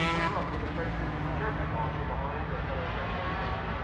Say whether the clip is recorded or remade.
recorded